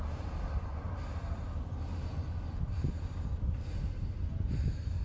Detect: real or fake real